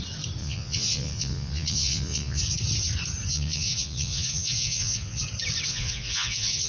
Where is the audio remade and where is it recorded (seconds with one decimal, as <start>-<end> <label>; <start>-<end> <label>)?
0.0-0.4 recorded; 0.4-2.4 remade; 2.4-3.3 recorded; 3.3-5.2 remade; 5.2-5.7 recorded; 5.7-6.7 remade